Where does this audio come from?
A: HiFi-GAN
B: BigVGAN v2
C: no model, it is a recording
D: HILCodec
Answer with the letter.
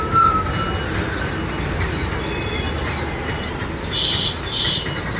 C